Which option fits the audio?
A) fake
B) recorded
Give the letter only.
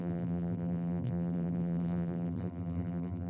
A